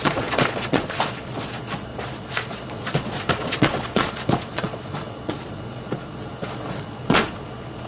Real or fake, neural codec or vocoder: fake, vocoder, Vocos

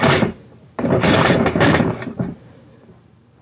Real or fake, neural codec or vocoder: fake, vocoder, BigVGAN v2